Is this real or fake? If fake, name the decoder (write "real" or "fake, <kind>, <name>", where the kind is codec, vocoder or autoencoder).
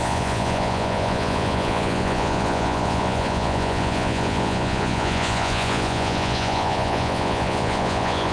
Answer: fake, vocoder, Vocos